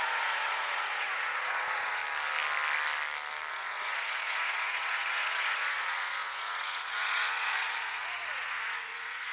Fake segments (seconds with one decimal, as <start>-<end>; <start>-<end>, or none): 0.0-2.0; 3.5-9.3